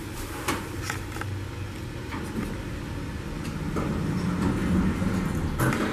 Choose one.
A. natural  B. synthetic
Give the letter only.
A